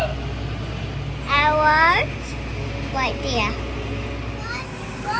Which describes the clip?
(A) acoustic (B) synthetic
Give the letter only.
A